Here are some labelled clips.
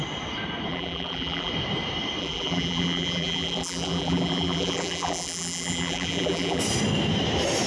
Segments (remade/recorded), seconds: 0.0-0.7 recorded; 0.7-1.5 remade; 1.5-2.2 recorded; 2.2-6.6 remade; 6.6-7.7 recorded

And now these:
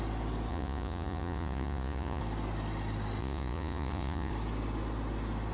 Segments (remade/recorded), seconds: 0.0-0.5 recorded; 0.5-2.2 remade; 2.2-3.2 recorded; 3.2-4.3 remade; 4.3-5.5 recorded